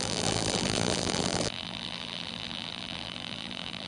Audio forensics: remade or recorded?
remade